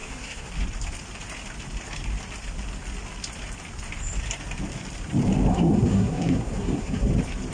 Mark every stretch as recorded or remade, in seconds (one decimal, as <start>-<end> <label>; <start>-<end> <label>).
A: 0.0-0.5 remade; 0.5-5.5 recorded; 5.5-7.1 remade; 7.1-7.5 recorded